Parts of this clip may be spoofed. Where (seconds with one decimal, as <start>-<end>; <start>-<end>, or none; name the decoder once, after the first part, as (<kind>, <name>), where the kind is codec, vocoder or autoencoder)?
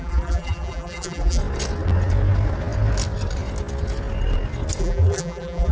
0.0-1.4 (vocoder, BigVGAN v2); 4.8-5.7